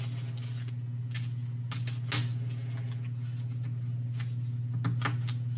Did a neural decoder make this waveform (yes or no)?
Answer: no